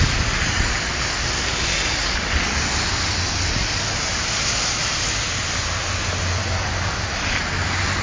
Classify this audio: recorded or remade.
recorded